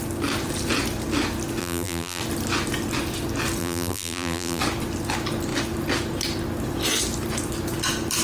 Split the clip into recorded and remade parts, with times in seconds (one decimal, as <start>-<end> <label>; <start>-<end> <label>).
0.0-1.6 recorded; 1.6-2.2 remade; 2.2-3.6 recorded; 3.6-4.6 remade; 4.6-8.2 recorded